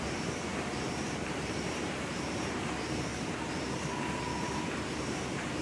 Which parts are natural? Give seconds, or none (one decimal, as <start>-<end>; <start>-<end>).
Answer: 3.1-4.9